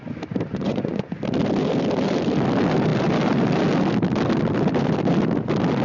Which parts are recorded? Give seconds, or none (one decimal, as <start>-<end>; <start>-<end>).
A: 0.0-0.5; 1.2-5.8